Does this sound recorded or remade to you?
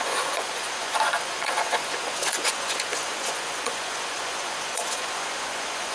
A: remade